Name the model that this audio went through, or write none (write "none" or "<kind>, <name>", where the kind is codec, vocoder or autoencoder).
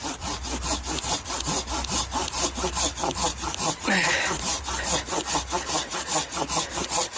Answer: none